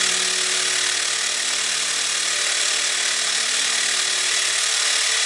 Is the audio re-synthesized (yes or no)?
no